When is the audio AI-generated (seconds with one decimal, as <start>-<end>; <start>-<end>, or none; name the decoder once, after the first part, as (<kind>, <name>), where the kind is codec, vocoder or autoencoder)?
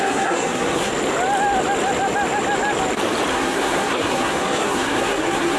0.0-0.9 (codec, SNAC); 3.3-5.6